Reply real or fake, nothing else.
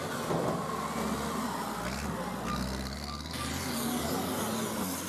real